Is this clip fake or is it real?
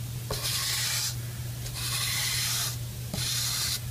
real